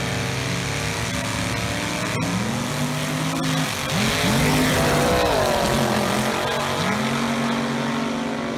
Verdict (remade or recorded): recorded